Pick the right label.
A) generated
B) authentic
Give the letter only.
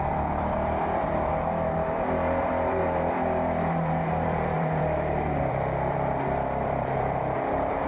A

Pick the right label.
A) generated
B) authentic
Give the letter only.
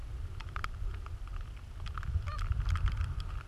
A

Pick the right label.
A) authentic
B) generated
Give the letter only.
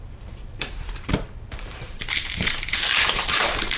B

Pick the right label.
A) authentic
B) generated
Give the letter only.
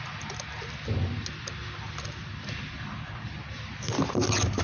A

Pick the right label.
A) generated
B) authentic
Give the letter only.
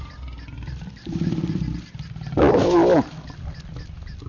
A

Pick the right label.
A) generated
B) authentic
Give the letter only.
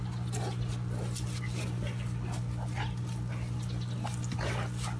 B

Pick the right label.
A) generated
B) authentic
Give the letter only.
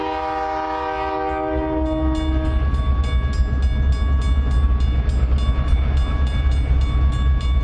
B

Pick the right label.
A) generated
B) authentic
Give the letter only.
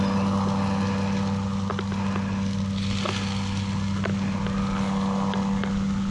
B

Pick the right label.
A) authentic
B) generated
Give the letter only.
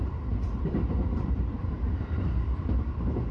B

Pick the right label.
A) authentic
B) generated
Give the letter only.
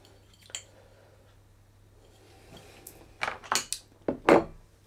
A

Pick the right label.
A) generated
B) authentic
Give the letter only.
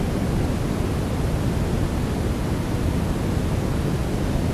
B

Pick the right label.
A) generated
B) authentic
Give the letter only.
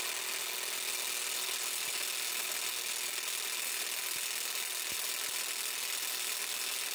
B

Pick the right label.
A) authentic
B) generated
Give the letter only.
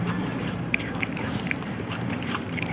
B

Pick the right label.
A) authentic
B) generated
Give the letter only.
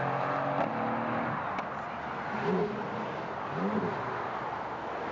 A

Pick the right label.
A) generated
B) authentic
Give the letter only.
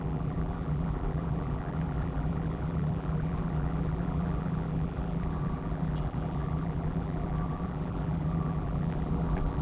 A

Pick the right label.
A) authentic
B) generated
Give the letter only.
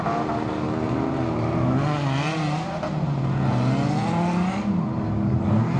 A